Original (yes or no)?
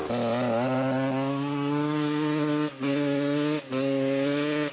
yes